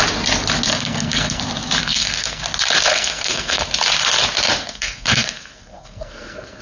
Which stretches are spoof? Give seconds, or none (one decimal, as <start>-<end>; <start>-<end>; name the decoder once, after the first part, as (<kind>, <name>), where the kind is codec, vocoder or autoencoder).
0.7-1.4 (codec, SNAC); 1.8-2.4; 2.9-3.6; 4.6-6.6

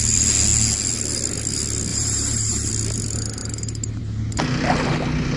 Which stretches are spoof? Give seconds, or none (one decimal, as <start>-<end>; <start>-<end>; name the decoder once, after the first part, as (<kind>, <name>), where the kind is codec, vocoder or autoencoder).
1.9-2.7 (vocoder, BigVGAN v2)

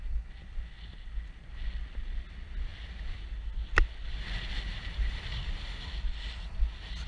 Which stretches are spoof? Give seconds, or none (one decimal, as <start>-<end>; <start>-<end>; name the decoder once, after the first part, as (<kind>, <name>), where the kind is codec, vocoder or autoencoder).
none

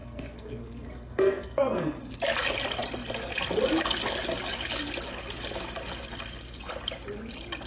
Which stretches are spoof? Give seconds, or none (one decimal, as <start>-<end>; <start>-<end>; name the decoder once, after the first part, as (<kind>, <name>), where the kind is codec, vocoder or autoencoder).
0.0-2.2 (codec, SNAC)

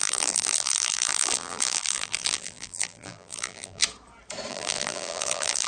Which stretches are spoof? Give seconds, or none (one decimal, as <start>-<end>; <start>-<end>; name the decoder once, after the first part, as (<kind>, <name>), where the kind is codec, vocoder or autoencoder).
0.0-3.8 (vocoder, BigVGAN v2); 4.5-5.7

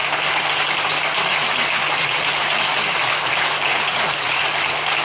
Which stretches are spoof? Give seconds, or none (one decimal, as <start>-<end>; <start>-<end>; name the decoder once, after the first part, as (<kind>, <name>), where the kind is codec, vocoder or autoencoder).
3.7-4.5 (vocoder, Vocos)

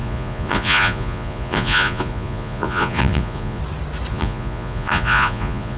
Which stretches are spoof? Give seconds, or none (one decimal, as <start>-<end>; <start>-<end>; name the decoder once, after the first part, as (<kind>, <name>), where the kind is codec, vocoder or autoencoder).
0.0-3.6 (vocoder, Vocos); 4.1-5.8